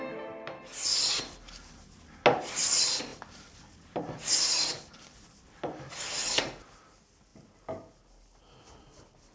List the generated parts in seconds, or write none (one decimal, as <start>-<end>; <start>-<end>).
none